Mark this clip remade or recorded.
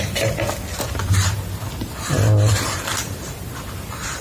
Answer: recorded